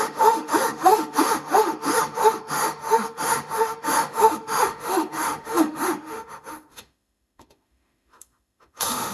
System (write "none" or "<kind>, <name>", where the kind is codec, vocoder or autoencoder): autoencoder, DAC-VAE